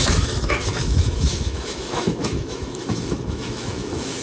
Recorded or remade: remade